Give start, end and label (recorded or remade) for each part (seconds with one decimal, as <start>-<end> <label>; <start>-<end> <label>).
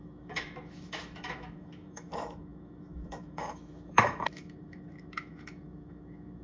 0.0-6.4 remade